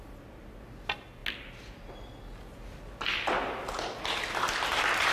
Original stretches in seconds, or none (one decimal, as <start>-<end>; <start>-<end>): 0.0-5.1